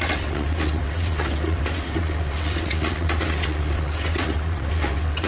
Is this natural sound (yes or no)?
no